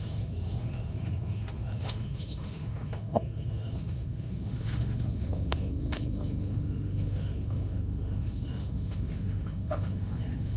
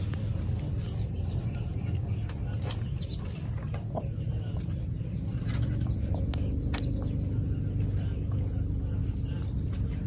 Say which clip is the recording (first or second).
second